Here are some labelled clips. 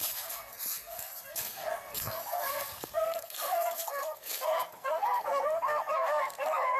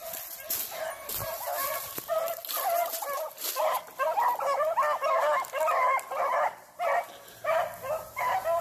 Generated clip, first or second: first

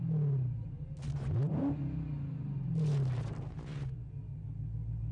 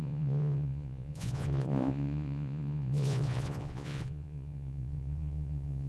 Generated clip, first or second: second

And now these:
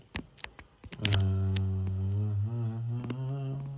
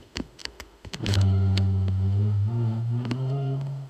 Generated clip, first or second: second